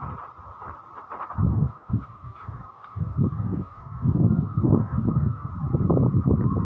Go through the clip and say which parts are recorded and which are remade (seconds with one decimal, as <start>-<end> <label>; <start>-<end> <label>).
0.0-1.5 recorded; 1.5-5.5 remade; 5.5-6.6 recorded